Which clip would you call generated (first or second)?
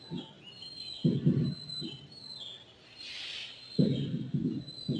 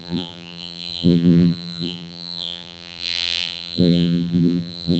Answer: second